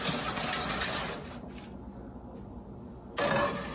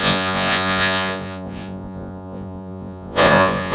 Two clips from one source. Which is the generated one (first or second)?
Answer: second